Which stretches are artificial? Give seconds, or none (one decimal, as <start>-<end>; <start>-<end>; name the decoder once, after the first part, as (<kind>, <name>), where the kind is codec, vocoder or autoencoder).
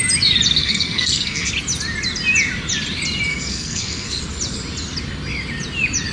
0.6-1.5 (codec, SNAC); 3.3-4.2